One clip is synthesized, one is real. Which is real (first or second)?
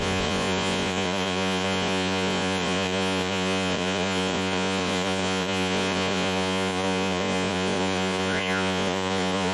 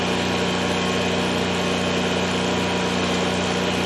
second